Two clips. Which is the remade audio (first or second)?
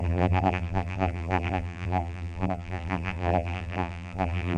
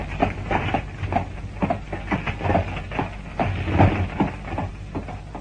first